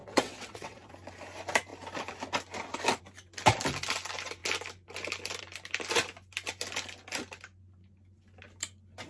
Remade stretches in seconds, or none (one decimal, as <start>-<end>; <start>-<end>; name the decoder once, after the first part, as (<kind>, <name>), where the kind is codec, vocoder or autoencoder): 0.0-0.9 (vocoder, WaveNeXt)